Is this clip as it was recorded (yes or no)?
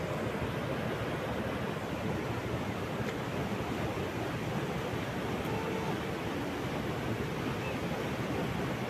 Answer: yes